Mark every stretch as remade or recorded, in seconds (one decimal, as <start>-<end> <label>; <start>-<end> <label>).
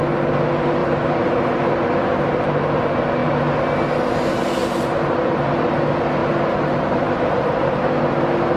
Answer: 0.0-0.8 recorded; 0.8-1.4 remade; 1.4-4.6 recorded; 4.6-5.5 remade; 5.5-6.2 recorded; 6.2-8.0 remade; 8.0-8.6 recorded